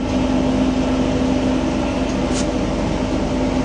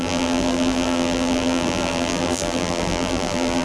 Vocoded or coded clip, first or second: second